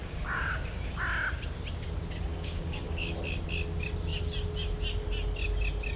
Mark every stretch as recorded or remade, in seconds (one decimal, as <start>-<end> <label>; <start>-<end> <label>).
0.0-0.5 remade; 0.5-2.3 recorded; 2.3-3.1 remade; 3.1-6.0 recorded